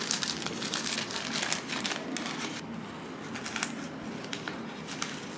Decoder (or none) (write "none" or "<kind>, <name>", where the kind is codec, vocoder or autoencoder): none